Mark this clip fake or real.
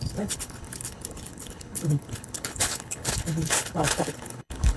fake